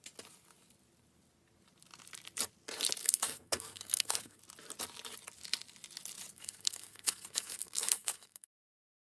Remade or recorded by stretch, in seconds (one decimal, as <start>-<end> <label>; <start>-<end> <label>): 0.0-3.0 recorded; 3.0-4.4 remade; 4.4-6.3 recorded; 6.3-9.0 remade